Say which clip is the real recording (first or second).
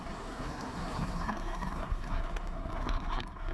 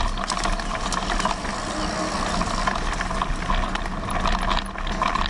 second